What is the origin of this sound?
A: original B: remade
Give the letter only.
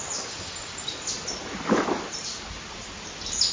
A